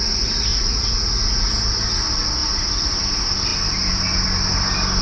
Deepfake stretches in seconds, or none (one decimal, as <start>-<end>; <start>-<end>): 0.5-1.5